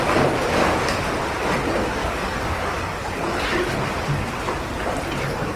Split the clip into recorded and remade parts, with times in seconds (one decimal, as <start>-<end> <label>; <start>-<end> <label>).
0.0-2.0 recorded; 2.0-3.1 remade; 3.1-5.6 recorded